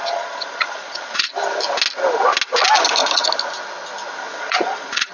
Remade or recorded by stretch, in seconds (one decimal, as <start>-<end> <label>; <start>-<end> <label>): 0.0-1.3 remade; 1.3-4.4 recorded; 4.4-5.1 remade